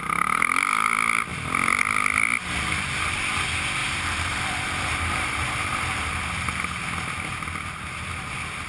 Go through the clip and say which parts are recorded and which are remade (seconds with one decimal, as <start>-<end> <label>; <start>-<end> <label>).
0.0-3.8 recorded; 3.8-6.8 remade; 6.8-8.7 recorded